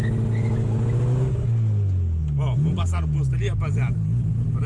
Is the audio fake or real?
real